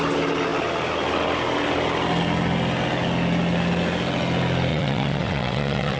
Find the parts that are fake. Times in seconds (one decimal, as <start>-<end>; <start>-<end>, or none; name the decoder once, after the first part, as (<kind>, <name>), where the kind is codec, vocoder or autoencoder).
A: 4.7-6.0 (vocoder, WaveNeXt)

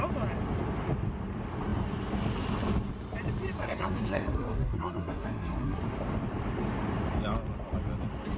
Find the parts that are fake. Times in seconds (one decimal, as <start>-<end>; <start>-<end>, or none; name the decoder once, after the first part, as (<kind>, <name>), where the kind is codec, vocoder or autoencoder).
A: 3.6-5.8 (codec, SNAC)

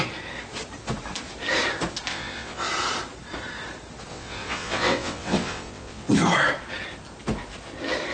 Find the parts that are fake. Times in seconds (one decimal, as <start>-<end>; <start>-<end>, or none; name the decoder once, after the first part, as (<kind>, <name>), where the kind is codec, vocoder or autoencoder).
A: 2.1-2.7 (vocoder, WaveNeXt); 4.1-6.1

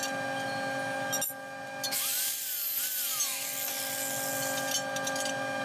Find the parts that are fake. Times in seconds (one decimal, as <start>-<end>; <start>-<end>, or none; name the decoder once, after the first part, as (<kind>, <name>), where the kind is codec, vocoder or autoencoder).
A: none

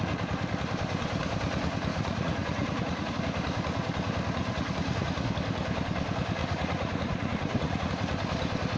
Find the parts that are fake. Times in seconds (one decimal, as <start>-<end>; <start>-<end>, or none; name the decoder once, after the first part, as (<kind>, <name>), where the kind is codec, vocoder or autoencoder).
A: 1.9-3.1 (vocoder, Vocos); 4.4-5.1; 6.4-7.9

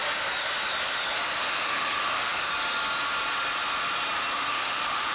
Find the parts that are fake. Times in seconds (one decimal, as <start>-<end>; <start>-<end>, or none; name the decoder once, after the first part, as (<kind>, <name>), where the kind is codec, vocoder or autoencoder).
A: 1.4-2.5 (autoencoder, DAC-VAE); 4.5-5.1

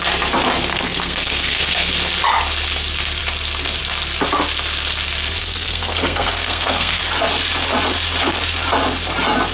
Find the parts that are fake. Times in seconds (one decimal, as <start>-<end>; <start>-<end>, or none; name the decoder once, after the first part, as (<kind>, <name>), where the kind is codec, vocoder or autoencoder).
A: 0.7-1.9 (codec, SNAC); 5.4-7.0

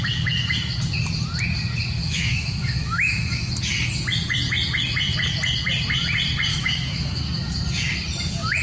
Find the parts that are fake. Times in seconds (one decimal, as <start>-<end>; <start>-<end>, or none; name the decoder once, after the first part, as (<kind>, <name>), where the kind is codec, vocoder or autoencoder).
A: 2.0-3.5 (autoencoder, DAC-VAE); 6.5-7.2